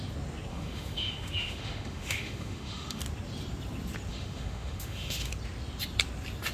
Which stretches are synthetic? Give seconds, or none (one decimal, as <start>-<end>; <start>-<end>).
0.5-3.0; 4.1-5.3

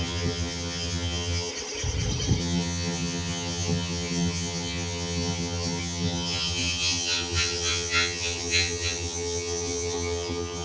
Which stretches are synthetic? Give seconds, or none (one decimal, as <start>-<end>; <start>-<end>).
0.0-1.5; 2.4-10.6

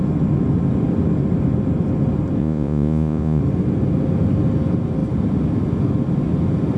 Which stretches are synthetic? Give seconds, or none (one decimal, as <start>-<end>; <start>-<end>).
2.4-3.4